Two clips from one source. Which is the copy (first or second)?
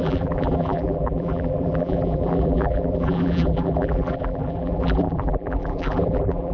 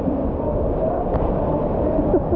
first